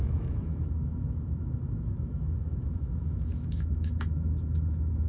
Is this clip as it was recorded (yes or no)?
no